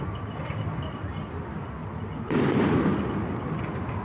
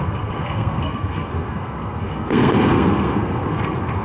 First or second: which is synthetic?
second